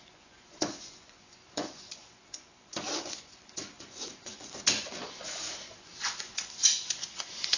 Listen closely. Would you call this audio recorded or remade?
remade